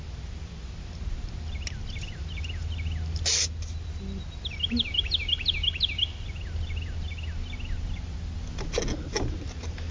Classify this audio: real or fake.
real